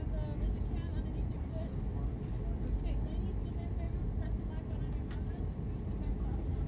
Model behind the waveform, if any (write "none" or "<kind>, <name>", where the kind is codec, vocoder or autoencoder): none